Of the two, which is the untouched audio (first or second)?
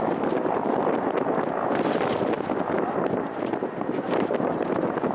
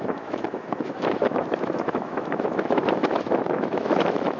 first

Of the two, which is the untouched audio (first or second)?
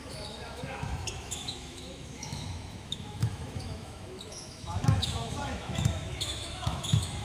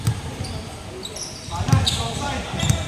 second